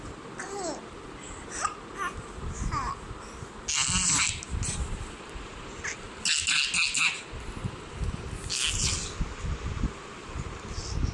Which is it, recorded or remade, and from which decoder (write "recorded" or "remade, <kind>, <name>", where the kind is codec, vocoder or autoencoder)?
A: recorded